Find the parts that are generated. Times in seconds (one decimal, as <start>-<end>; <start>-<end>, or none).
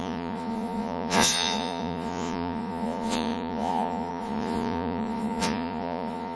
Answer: 0.0-6.4